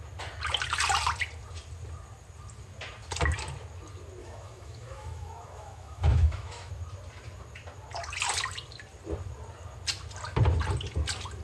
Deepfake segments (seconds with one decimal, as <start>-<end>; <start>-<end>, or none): 4.2-6.7